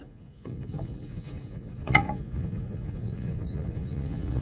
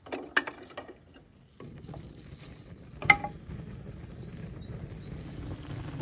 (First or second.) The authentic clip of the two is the second